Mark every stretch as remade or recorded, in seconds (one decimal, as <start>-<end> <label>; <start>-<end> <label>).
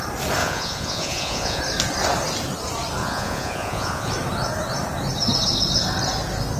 0.0-0.4 recorded; 0.4-1.6 remade; 1.6-3.0 recorded; 3.0-4.1 remade; 4.1-6.6 recorded